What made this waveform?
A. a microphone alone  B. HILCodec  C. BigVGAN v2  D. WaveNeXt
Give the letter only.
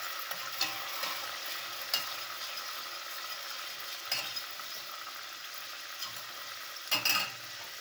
A